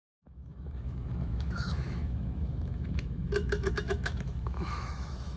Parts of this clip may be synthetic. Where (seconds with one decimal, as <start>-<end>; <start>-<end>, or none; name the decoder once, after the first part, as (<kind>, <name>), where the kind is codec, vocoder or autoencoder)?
0.0-5.4 (autoencoder, DAC-VAE)